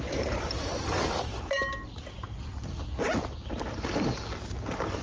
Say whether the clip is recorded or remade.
recorded